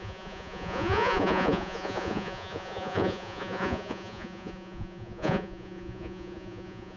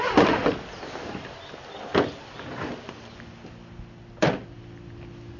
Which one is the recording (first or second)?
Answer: second